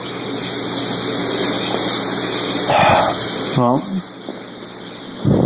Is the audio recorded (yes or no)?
yes